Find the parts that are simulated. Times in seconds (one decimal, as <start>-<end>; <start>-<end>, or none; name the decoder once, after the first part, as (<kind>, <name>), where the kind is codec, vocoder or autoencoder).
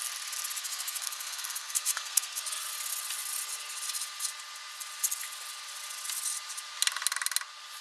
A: 0.6-2.4 (codec, SNAC)